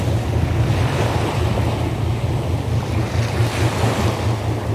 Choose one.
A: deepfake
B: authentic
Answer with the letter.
B